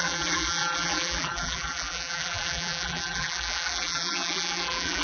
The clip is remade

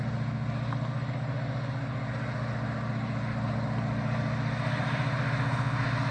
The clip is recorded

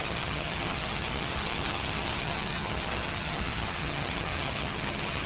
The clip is remade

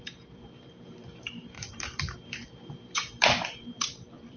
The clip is remade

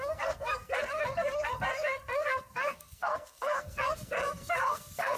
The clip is remade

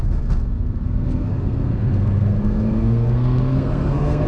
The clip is remade